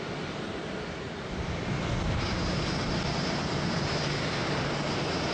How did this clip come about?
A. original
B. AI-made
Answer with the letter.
A